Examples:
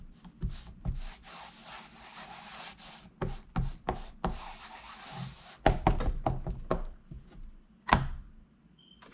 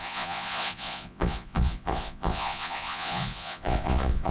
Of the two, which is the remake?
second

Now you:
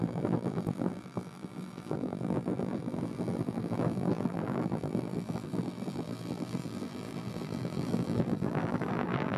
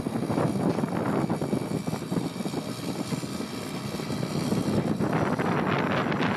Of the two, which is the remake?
first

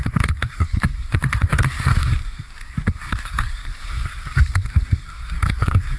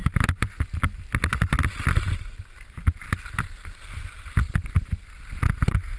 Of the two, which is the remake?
first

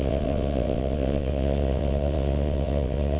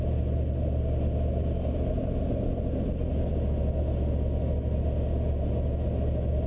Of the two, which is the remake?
first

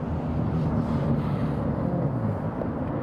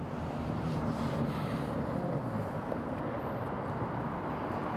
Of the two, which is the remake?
second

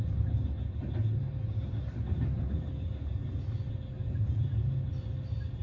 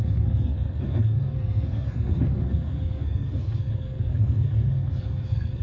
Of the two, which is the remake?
second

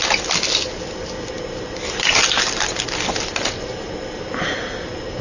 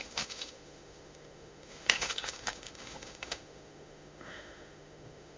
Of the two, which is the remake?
second